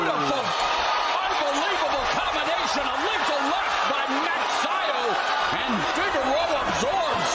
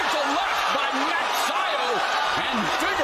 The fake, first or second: second